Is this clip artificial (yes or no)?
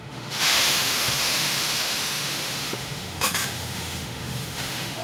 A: yes